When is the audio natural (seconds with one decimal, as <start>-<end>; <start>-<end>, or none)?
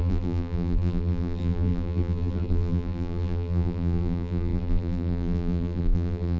none